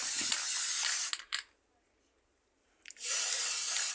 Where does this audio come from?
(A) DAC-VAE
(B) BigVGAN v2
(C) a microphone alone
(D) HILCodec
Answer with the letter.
C